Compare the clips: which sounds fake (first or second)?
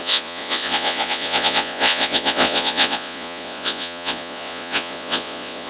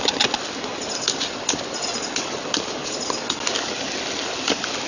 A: first